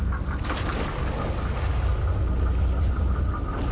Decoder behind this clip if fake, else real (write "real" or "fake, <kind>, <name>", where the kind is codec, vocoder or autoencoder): real